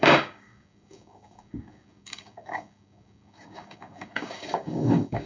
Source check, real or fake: fake